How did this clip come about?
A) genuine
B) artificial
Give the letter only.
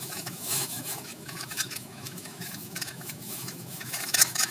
B